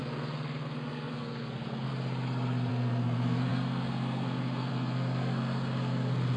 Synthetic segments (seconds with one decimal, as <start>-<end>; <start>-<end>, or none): 0.0-1.9; 2.7-6.4